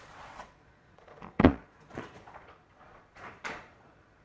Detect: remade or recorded remade